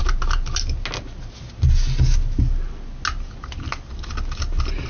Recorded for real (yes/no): yes